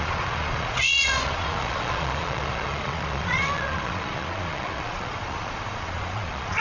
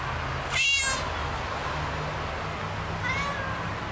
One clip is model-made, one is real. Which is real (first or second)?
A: second